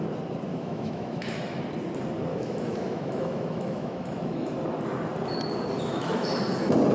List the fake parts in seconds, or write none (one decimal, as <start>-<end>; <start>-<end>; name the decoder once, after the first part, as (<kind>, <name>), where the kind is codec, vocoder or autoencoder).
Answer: 0.5-1.6 (autoencoder, DAC-VAE); 2.3-4.5; 5.9-6.4